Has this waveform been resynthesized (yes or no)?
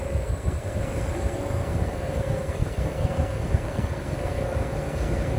yes